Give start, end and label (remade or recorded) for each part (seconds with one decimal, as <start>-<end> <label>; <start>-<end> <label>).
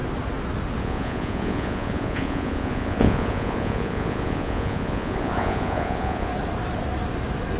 0.0-0.8 recorded; 0.8-6.3 remade; 6.3-7.6 recorded